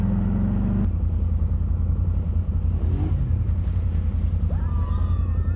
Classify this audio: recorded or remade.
recorded